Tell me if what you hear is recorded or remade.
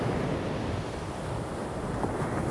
recorded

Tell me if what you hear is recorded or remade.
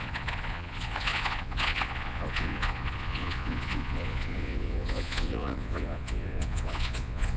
remade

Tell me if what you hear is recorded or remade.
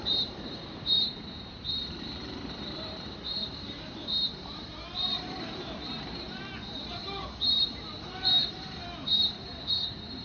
remade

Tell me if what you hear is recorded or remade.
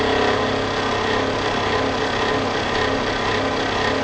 recorded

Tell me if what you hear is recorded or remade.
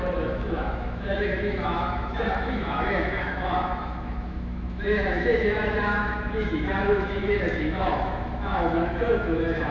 remade